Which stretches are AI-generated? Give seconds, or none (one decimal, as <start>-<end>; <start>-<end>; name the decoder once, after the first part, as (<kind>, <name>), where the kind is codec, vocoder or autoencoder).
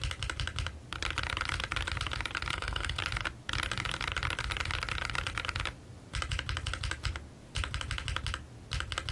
2.5-3.0 (codec, SNAC)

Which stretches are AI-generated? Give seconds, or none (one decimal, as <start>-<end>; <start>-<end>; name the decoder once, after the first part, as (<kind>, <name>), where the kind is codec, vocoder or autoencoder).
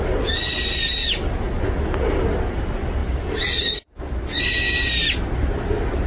3.0-4.0 (vocoder, BigVGAN v2)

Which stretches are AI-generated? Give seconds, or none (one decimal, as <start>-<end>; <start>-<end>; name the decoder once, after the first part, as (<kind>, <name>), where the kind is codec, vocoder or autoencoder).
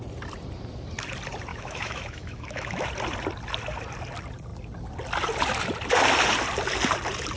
1.5-2.9 (autoencoder, DAC-VAE)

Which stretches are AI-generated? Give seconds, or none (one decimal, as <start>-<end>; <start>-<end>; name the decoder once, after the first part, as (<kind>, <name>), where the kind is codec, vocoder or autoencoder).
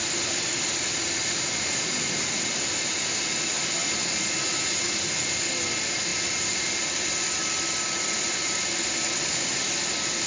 0.0-3.8 (vocoder, BigVGAN v2); 5.5-10.3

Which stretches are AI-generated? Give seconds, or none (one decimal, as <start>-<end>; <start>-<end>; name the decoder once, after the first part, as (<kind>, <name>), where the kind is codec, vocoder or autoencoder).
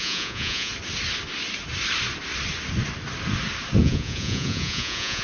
0.0-0.7 (vocoder, Vocos); 3.8-5.2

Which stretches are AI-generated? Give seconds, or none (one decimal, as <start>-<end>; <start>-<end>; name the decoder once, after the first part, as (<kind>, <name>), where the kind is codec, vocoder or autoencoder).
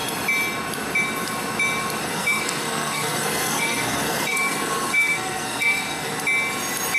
2.0-6.1 (codec, SNAC)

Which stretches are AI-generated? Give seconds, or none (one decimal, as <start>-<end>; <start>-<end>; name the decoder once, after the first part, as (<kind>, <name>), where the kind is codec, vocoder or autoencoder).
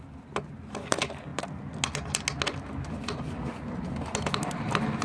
none